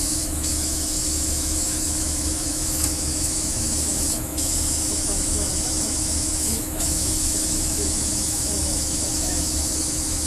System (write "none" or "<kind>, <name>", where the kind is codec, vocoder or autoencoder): autoencoder, DAC-VAE